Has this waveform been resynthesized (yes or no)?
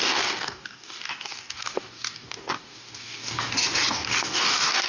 yes